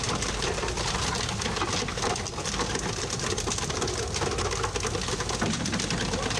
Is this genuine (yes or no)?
yes